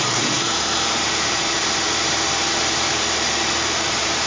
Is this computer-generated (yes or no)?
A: yes